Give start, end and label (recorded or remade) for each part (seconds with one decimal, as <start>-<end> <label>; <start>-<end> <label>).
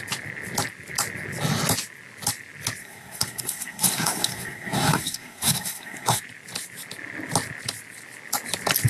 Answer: 0.0-2.8 recorded; 2.8-6.2 remade; 6.2-8.9 recorded